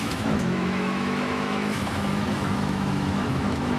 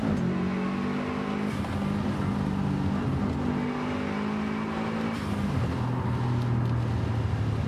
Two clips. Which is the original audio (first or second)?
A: second